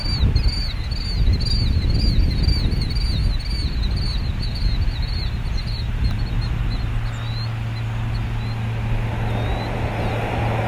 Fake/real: real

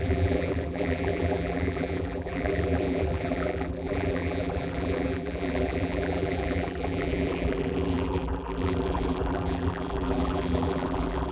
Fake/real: fake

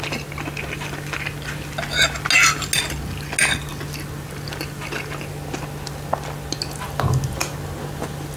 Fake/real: real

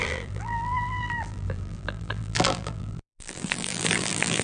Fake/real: fake